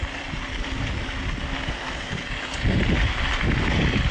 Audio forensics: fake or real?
real